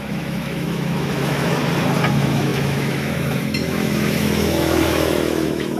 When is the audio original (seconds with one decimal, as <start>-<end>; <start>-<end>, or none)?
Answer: 1.6-2.1